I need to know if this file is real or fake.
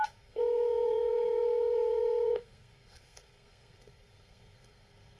fake